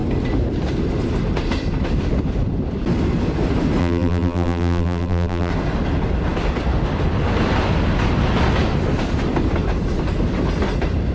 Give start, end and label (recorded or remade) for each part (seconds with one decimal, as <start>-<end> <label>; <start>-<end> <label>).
0.0-3.8 recorded; 3.8-5.5 remade; 5.5-11.1 recorded